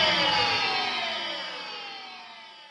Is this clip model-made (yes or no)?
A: no